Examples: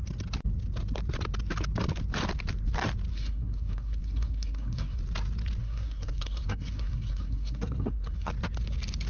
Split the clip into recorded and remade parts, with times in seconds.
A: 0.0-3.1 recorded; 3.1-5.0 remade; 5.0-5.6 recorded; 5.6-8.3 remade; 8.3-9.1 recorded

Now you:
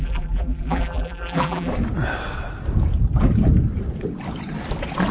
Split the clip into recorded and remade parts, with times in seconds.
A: 0.0-1.7 remade; 1.7-5.1 recorded

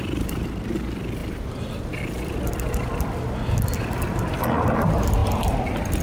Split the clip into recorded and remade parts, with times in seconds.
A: 0.0-6.0 recorded